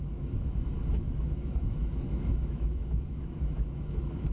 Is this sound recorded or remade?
remade